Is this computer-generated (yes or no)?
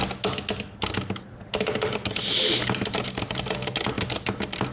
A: no